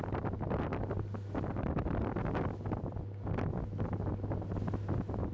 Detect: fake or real real